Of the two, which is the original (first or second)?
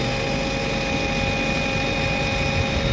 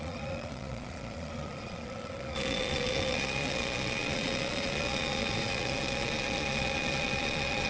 first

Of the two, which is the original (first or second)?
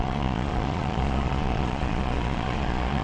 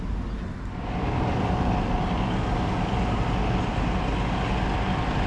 second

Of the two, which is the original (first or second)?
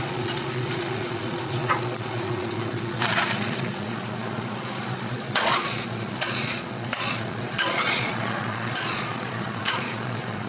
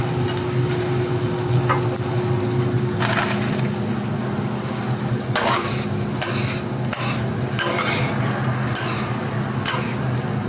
second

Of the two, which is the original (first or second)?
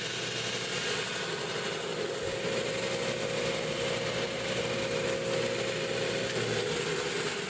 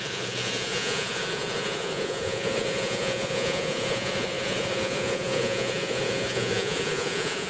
first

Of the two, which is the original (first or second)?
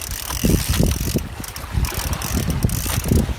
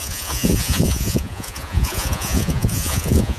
first